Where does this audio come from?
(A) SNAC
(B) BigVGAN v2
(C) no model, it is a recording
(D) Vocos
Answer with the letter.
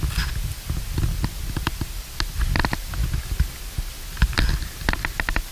C